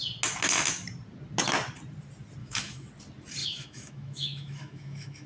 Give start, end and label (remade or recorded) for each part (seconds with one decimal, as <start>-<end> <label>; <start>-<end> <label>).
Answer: 0.0-2.4 recorded; 2.4-2.9 remade; 2.9-3.4 recorded; 3.4-5.3 remade